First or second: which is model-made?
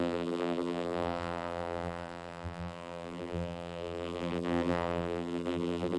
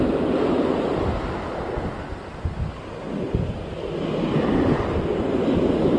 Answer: first